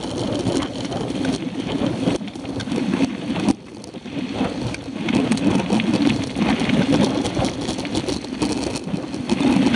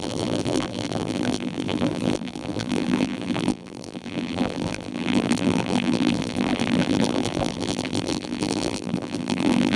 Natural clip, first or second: first